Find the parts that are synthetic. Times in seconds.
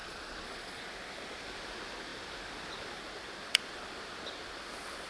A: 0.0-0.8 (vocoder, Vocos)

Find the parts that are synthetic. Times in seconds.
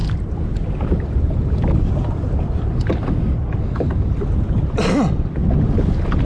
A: none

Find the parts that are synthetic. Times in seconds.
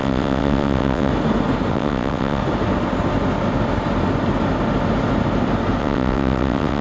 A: 0.0-1.1 (vocoder, WaveNeXt); 1.7-2.4; 5.8-6.8